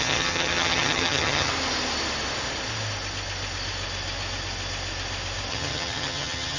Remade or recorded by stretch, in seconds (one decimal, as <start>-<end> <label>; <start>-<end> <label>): 0.0-1.5 remade; 1.5-5.5 recorded; 5.5-6.6 remade